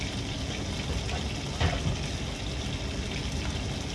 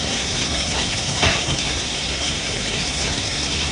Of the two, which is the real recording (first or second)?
first